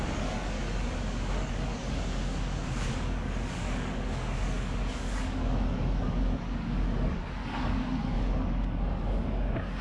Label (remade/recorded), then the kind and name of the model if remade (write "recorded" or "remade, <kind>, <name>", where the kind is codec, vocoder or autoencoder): remade, codec, DAC